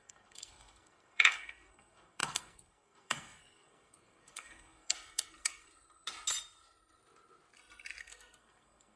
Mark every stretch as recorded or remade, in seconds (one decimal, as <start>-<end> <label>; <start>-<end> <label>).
0.0-5.7 remade; 5.7-8.0 recorded; 8.0-9.0 remade